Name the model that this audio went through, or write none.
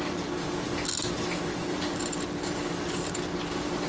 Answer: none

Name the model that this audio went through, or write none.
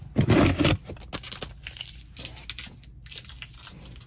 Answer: none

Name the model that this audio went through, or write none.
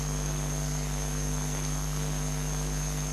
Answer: codec, SNAC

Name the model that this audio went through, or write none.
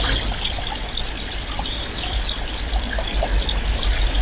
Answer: none